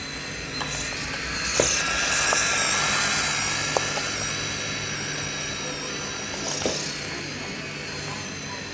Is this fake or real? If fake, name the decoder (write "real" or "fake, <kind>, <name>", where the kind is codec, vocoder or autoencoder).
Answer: real